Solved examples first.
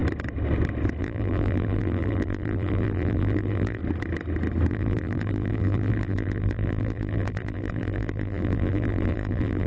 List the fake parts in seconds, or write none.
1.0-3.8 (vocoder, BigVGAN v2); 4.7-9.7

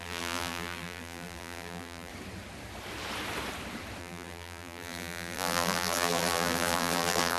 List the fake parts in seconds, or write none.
0.0-2.1 (vocoder, BigVGAN v2); 4.0-7.4

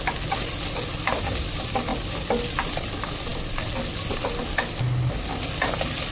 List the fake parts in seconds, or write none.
none

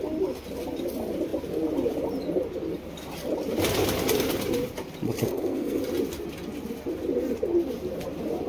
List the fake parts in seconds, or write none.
5.2-5.8 (codec, SNAC)